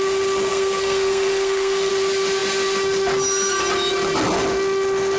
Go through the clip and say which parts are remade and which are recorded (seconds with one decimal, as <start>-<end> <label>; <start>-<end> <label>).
0.0-0.5 recorded; 0.5-1.9 remade; 1.9-5.2 recorded